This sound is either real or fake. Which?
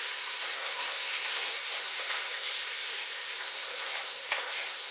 fake